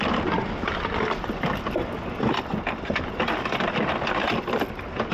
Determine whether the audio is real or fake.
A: real